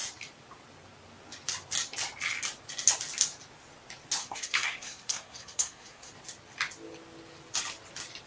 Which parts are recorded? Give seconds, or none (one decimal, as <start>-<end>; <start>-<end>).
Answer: 0.0-4.2; 6.1-8.3